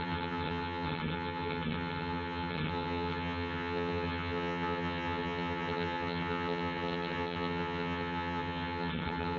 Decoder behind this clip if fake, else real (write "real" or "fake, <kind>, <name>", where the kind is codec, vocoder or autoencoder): fake, vocoder, HiFi-GAN